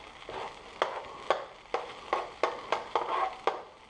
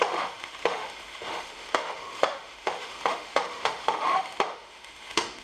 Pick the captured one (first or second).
first